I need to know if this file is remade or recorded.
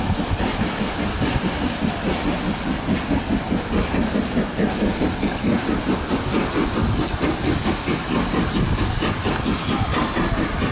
recorded